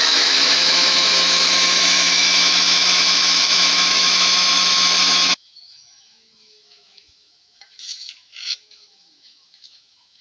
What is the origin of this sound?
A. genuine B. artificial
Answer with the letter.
B